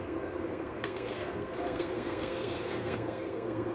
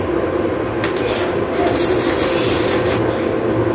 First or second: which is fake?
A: first